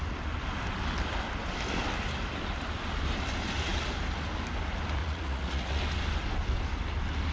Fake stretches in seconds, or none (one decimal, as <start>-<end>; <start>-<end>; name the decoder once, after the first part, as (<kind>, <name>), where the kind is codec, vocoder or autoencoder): 5.0-5.8 (vocoder, Vocos)